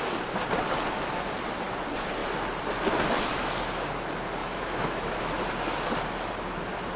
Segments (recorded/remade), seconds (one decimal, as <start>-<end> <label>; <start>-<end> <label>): 0.0-4.4 recorded; 4.4-5.4 remade; 5.4-7.0 recorded